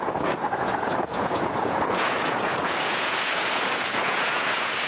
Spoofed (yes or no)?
yes